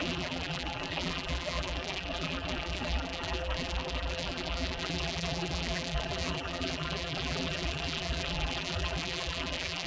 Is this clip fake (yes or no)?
yes